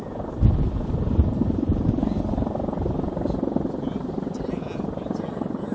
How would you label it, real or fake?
real